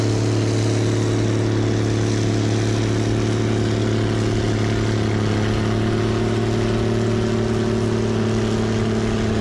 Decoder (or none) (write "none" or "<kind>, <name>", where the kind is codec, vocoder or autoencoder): none